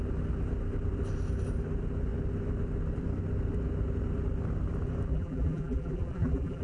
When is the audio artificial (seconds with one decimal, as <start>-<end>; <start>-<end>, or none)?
5.1-6.6